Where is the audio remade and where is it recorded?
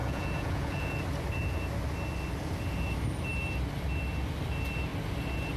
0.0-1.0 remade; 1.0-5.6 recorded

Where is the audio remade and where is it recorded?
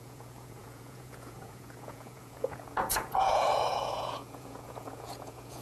0.0-5.6 remade